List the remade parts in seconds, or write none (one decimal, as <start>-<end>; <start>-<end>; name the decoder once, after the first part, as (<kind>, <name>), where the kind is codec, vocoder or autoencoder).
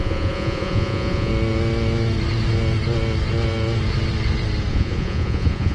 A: 0.0-1.3 (vocoder, Vocos); 4.7-5.7